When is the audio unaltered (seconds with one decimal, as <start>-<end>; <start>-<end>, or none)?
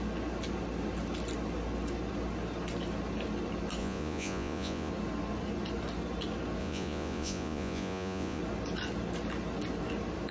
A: 0.0-3.8; 4.9-6.6; 8.4-10.3